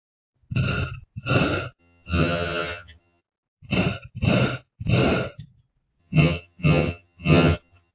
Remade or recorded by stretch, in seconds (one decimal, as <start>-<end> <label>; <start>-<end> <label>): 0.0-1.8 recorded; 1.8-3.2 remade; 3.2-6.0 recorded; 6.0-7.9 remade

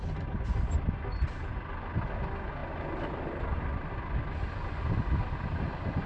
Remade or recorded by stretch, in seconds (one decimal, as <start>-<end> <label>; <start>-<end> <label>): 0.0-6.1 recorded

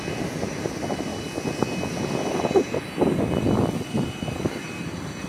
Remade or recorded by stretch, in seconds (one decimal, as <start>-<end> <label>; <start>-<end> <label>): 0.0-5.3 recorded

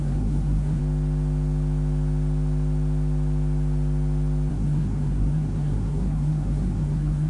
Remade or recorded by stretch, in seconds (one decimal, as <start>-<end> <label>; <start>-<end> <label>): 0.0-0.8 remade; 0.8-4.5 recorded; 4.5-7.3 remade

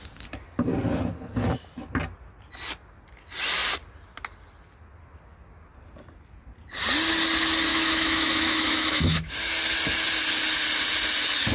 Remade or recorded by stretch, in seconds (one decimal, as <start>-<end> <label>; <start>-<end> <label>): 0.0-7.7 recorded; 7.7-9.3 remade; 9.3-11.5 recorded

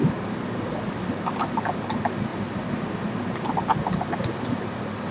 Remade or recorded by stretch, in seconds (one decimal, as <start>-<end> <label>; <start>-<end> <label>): 0.0-5.1 recorded